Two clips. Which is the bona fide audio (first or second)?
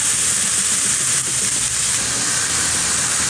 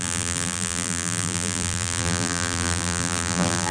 first